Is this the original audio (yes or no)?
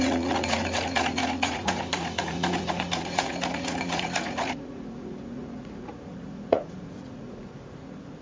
no